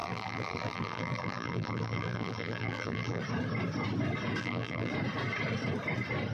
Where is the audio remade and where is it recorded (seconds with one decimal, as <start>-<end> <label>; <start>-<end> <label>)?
0.0-3.2 remade; 3.2-4.4 recorded; 4.4-4.9 remade; 4.9-6.3 recorded